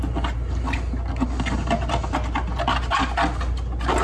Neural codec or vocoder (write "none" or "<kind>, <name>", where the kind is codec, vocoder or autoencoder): none